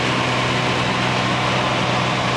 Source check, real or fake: real